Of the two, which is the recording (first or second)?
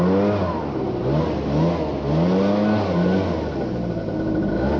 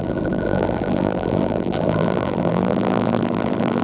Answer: first